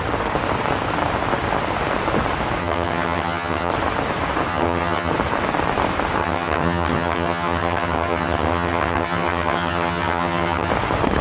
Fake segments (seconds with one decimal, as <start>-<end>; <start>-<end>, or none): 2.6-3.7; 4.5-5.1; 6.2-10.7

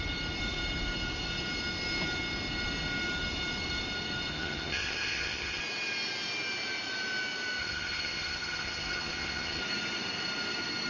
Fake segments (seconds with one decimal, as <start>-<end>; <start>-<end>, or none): 4.3-5.6; 7.6-9.6

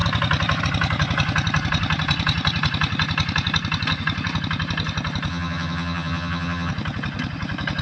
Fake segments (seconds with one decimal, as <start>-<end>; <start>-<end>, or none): 5.3-6.7

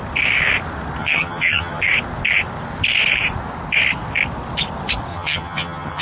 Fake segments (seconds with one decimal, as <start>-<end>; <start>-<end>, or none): 1.0-1.8; 5.1-6.0

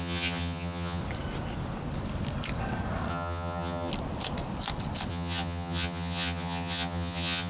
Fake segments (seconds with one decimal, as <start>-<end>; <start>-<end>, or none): 0.0-1.0; 3.1-3.9; 5.1-7.5

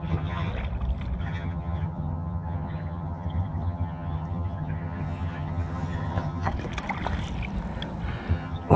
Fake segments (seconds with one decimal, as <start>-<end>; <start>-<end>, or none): 0.0-0.5; 1.2-6.5; 8.3-8.8

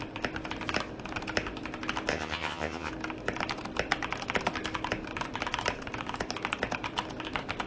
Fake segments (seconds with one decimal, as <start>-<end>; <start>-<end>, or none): 2.1-2.9

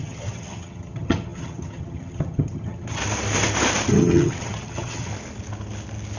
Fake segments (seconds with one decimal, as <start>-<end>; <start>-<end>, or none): 0.0-3.0; 3.9-5.1